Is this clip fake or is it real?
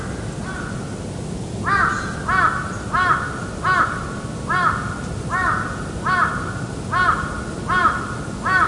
real